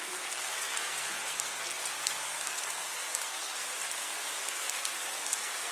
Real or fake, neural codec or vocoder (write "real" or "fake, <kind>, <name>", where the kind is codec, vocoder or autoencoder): fake, codec, SNAC